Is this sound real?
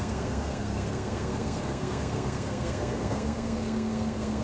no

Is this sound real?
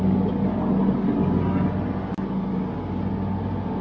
yes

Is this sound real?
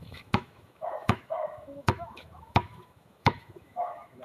no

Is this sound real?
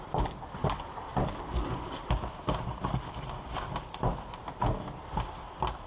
yes